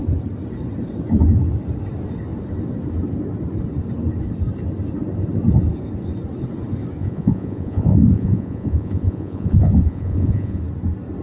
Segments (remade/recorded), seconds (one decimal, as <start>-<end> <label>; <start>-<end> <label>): 0.0-7.0 recorded; 7.0-10.6 remade; 10.6-11.2 recorded